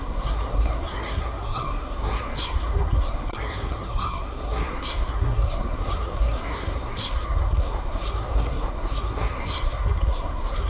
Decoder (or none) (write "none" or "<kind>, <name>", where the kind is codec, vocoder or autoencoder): codec, SNAC